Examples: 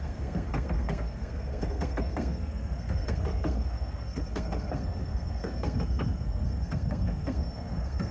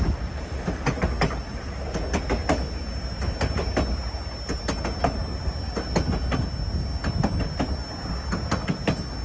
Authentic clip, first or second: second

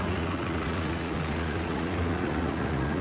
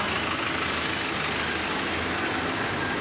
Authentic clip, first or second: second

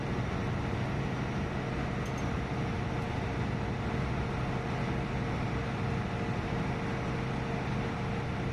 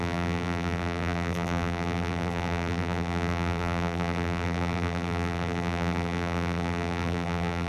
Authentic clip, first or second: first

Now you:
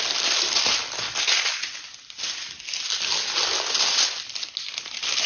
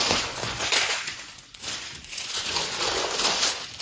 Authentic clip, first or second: first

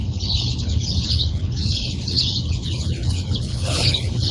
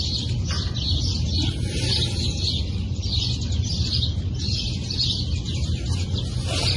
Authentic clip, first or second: second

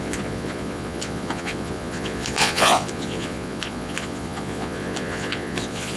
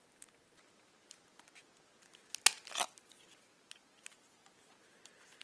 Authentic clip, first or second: second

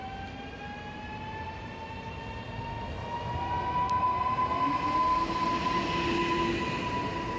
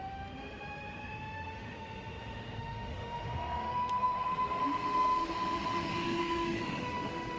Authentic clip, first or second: first